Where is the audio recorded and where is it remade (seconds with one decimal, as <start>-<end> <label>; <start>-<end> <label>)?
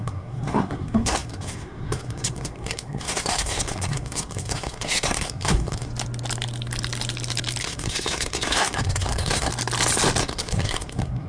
0.0-5.9 remade; 5.9-7.6 recorded; 7.6-9.5 remade; 9.5-10.2 recorded; 10.2-11.3 remade